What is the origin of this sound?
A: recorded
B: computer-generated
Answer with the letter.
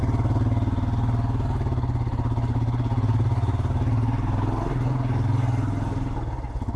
A